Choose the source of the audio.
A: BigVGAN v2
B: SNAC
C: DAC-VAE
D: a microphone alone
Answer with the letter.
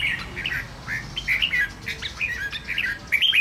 D